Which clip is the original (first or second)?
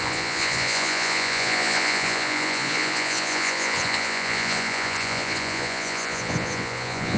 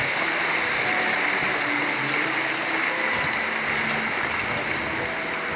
second